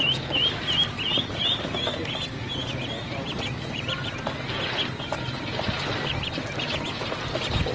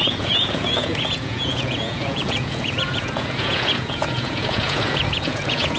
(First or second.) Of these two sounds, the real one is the first